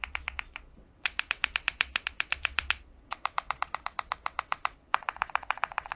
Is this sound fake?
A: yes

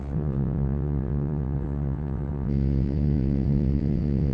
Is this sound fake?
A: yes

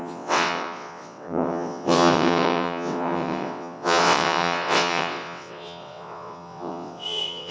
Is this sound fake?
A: yes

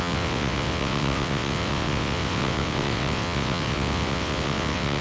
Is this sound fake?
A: yes